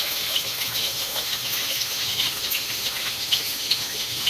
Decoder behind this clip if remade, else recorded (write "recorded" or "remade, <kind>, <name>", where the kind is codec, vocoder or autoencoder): remade, autoencoder, DAC-VAE